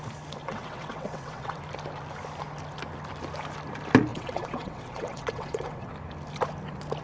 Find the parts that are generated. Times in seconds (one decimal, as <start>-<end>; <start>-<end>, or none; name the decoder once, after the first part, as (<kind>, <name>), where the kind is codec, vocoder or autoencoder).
0.4-1.6 (vocoder, WaveNeXt); 4.1-5.9